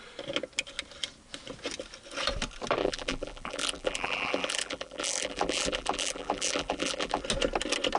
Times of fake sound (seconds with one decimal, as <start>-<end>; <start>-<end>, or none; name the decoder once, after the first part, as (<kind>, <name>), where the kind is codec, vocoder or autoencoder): 2.8-7.2 (vocoder, BigVGAN v2)